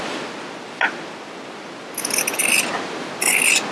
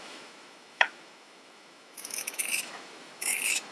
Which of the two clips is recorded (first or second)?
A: first